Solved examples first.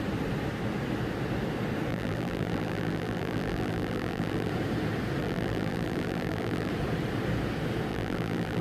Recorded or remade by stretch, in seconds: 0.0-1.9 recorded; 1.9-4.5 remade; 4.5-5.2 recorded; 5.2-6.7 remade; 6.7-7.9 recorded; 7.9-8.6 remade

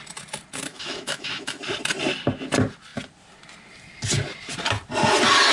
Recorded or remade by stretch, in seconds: 0.0-0.7 recorded; 0.7-1.6 remade; 1.6-5.5 recorded

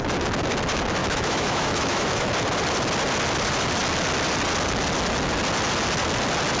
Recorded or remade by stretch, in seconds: 0.0-1.0 recorded; 1.0-2.3 remade; 2.3-6.6 recorded

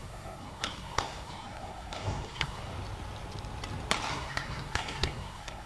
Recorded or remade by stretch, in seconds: 0.0-2.7 remade; 2.7-4.1 recorded; 4.1-5.7 remade

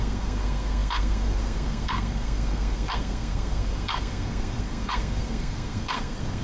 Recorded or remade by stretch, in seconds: 0.0-6.4 remade

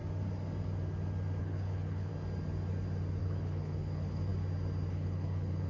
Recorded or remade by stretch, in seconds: 0.0-1.4 recorded; 1.4-2.1 remade; 2.1-3.2 recorded; 3.2-4.3 remade; 4.3-4.9 recorded; 4.9-5.7 remade